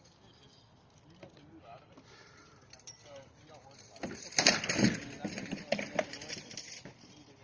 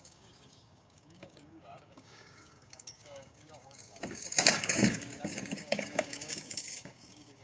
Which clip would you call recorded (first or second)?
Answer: first